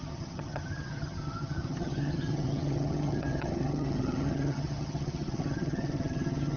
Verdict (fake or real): fake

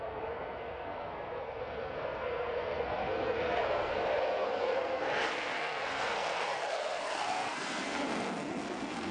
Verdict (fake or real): fake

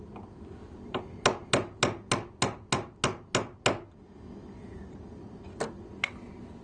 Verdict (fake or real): real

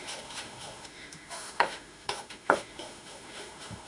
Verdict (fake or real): fake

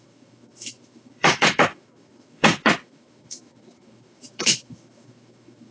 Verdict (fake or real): fake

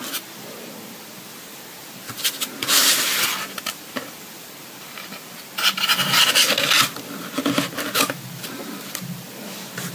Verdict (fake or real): fake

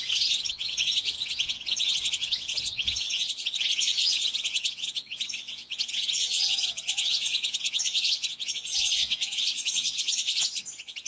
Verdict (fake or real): fake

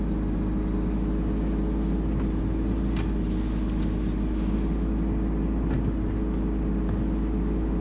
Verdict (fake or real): real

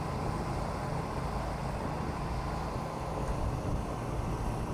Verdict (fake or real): real